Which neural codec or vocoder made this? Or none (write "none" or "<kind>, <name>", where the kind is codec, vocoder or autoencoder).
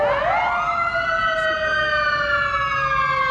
none